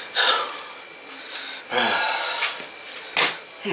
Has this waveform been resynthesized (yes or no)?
no